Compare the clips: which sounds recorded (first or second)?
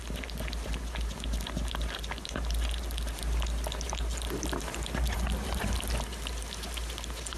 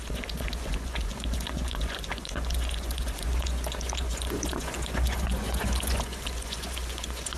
first